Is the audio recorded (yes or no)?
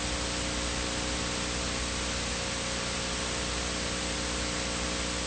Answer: yes